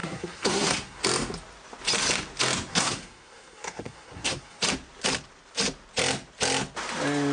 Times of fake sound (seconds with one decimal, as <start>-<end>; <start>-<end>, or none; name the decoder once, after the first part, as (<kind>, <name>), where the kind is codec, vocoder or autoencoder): 0.0-1.0 (codec, SNAC); 2.7-4.6